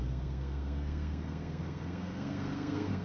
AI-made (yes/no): yes